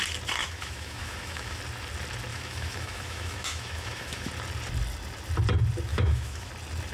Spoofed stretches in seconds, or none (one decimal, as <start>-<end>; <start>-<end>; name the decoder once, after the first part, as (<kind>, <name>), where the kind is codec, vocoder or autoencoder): 0.4-1.6 (autoencoder, DAC-VAE); 2.3-4.3; 5.9-6.5